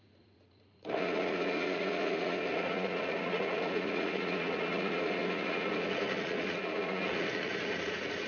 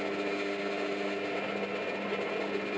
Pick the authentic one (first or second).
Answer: second